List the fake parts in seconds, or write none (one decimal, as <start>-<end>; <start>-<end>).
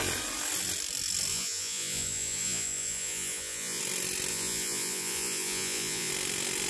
1.3-3.8; 4.3-6.1